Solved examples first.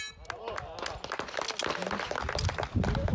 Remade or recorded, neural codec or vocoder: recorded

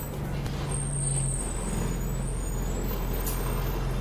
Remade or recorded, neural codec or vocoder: recorded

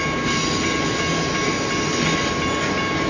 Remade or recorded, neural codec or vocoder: recorded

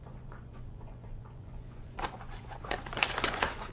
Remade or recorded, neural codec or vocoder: remade, vocoder, Vocos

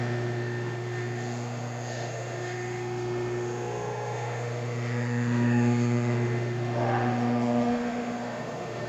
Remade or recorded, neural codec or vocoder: remade, autoencoder, DAC-VAE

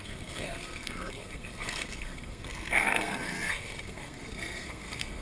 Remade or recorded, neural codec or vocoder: remade, codec, SNAC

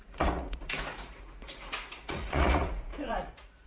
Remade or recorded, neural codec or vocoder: remade, vocoder, Vocos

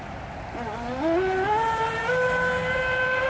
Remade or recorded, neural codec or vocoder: recorded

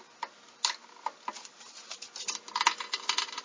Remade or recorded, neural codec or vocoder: recorded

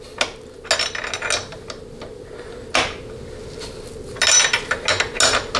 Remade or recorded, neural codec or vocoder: recorded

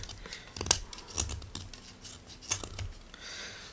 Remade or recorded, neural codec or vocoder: recorded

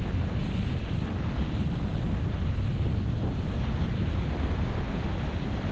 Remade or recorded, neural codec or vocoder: recorded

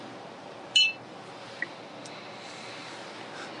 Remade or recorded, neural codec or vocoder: recorded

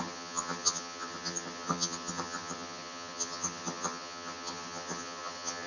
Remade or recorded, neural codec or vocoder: remade, vocoder, HiFi-GAN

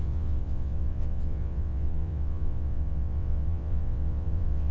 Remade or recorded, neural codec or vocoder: remade, vocoder, WaveNeXt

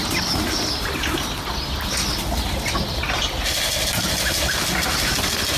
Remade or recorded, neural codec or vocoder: recorded